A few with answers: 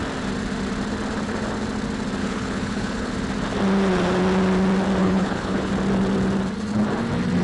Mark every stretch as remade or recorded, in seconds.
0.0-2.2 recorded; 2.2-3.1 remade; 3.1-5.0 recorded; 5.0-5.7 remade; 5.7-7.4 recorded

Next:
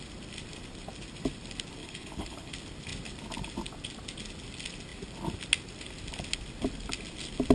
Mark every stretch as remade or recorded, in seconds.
0.0-1.8 recorded; 1.8-2.5 remade; 2.5-7.5 recorded

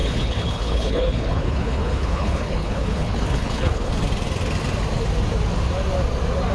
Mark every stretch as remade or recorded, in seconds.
0.0-3.9 remade; 3.9-6.5 recorded

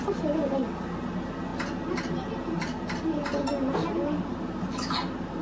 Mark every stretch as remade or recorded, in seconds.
0.0-5.4 recorded

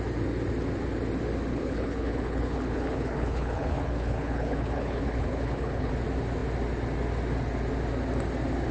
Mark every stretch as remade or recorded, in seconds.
0.0-1.5 recorded; 1.5-5.9 remade; 5.9-8.7 recorded

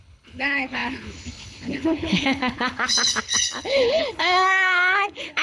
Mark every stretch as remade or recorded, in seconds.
0.0-5.4 remade

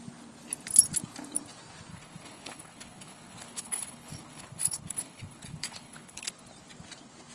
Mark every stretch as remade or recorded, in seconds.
0.0-1.9 recorded; 1.9-6.3 remade; 6.3-7.3 recorded